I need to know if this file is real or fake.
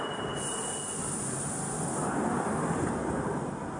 real